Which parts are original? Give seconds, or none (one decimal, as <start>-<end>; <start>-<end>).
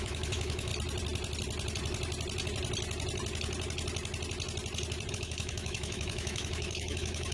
0.7-5.1